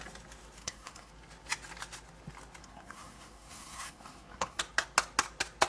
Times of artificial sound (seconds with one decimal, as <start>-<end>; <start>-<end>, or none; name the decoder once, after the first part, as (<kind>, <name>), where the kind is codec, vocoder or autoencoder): 0.6-1.1 (codec, SNAC); 2.6-4.6